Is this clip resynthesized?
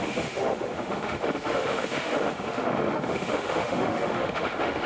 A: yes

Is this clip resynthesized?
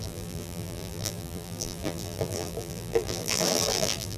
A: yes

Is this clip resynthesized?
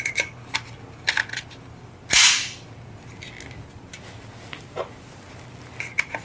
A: no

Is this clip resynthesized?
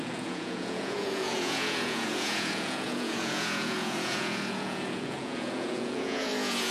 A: yes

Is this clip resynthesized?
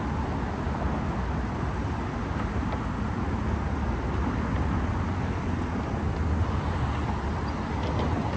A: no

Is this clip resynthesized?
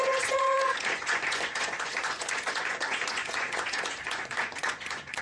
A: yes